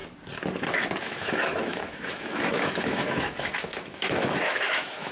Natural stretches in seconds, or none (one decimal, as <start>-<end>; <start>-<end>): 0.0-1.0